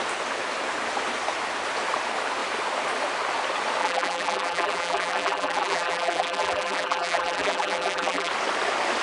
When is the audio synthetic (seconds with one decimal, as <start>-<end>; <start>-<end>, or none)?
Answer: 3.8-8.3